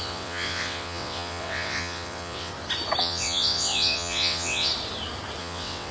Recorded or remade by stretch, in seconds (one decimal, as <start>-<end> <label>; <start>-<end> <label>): 0.0-2.5 remade; 2.5-3.0 recorded; 3.0-4.7 remade; 4.7-5.4 recorded; 5.4-5.9 remade